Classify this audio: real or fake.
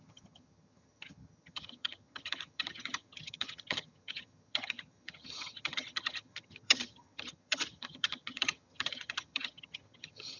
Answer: fake